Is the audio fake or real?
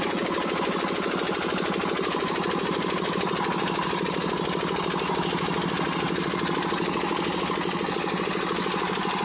real